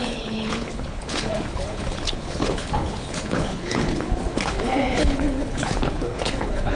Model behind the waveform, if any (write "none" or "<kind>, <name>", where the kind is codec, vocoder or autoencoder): codec, HILCodec